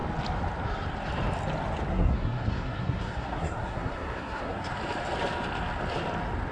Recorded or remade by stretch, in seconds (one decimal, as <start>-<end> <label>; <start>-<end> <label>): 0.0-1.9 recorded; 1.9-4.7 remade; 4.7-6.5 recorded